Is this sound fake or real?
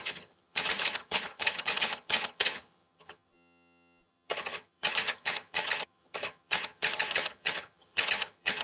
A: fake